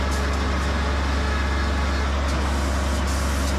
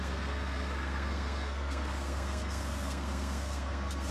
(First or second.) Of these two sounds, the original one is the first